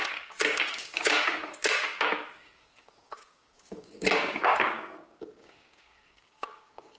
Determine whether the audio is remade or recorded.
remade